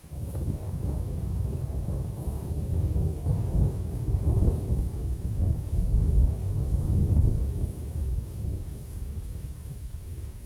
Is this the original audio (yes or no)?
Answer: no